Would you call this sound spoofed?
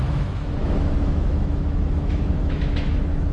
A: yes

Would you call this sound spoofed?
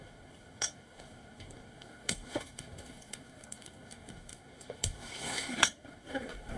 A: yes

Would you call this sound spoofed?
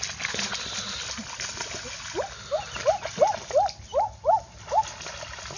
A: no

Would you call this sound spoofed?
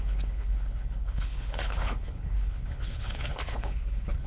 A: yes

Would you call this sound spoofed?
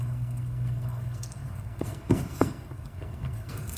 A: yes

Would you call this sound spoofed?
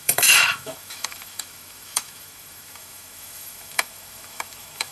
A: yes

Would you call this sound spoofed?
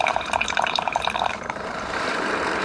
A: yes